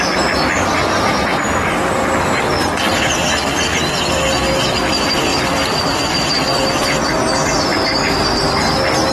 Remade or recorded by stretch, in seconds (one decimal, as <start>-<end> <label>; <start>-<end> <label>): 0.0-9.1 recorded